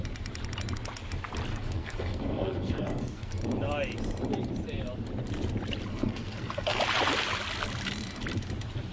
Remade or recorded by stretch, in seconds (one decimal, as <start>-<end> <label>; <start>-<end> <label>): 0.0-1.5 recorded; 1.5-3.4 remade; 3.4-5.9 recorded; 5.9-6.8 remade; 6.8-8.9 recorded